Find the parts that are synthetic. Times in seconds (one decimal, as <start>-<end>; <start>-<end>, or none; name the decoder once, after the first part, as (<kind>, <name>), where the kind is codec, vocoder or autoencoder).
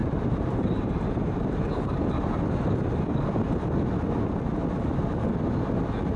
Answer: 0.0-2.0 (vocoder, BigVGAN v2)